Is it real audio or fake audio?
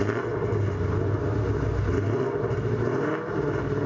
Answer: real